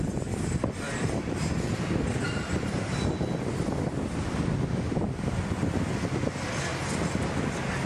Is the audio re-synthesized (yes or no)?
no